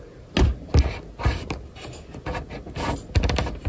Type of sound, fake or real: real